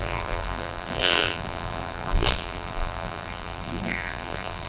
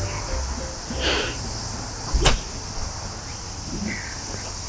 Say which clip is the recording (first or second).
second